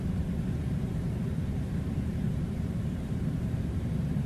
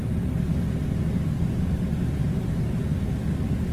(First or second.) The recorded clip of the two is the second